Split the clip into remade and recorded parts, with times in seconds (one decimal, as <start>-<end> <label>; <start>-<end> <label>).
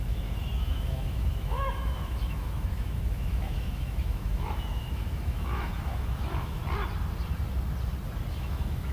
0.0-6.6 remade; 6.6-8.3 recorded; 8.3-8.9 remade